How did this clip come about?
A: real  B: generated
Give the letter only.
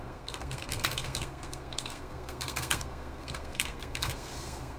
B